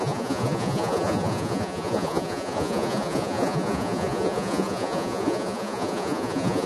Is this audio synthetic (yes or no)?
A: yes